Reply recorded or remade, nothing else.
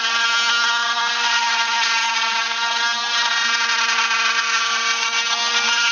recorded